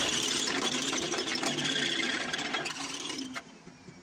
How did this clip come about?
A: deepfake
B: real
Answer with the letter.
A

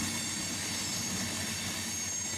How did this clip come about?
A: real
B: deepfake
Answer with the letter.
A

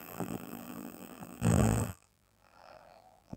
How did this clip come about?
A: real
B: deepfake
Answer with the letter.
B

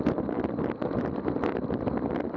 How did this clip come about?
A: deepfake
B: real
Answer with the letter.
B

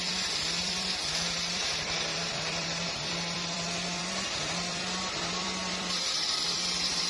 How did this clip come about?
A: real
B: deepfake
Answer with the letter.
B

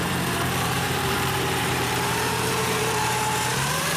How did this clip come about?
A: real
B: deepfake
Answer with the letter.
B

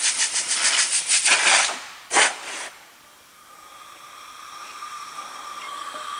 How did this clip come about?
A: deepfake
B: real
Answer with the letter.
A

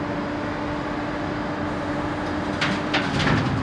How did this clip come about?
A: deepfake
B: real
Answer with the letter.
B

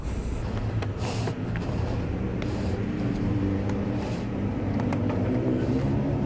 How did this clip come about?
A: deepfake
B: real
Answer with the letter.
A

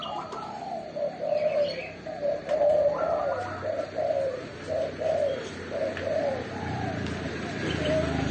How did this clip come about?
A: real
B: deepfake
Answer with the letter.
B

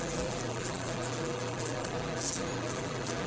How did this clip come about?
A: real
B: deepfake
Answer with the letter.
B